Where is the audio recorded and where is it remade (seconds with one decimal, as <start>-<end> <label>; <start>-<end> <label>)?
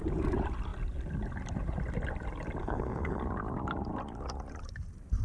0.0-2.6 recorded; 2.6-3.2 remade; 3.2-5.2 recorded